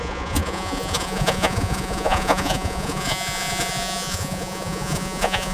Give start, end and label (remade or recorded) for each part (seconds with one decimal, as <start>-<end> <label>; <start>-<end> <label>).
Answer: 0.0-5.5 remade